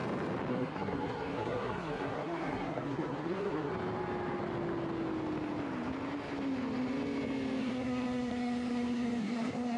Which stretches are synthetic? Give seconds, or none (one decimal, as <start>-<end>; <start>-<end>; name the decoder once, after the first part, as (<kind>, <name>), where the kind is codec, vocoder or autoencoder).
0.5-3.7 (codec, SNAC); 7.6-9.8